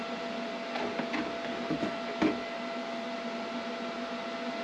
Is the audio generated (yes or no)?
no